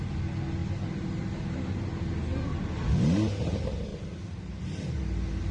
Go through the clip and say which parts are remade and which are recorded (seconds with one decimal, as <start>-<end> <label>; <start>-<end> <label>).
0.0-3.9 recorded; 3.9-4.6 remade; 4.6-5.5 recorded